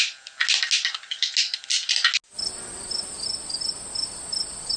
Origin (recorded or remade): recorded